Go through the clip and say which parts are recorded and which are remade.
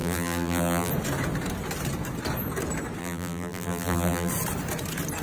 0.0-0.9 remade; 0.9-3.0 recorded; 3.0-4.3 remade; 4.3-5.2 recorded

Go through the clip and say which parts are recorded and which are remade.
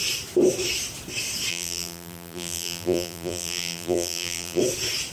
0.0-1.5 recorded; 1.5-4.6 remade; 4.6-5.1 recorded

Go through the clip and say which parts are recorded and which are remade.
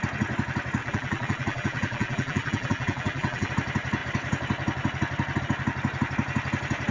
0.0-0.8 recorded; 0.8-3.5 remade; 3.5-6.9 recorded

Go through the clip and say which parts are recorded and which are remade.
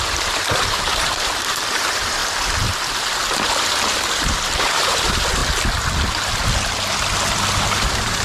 0.0-2.2 remade; 2.2-3.3 recorded; 3.3-5.4 remade; 5.4-7.6 recorded; 7.6-8.2 remade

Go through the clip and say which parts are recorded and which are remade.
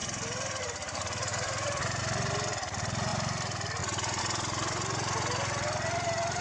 0.0-1.3 recorded; 1.3-2.0 remade; 2.0-6.4 recorded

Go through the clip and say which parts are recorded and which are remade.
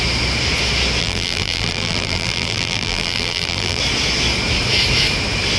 0.0-1.0 recorded; 1.0-3.8 remade; 3.8-5.6 recorded